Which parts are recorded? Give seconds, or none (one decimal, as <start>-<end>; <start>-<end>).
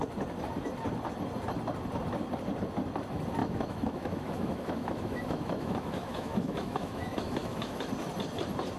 0.0-3.4; 7.9-8.8